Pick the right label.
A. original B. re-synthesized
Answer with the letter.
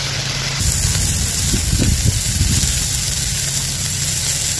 A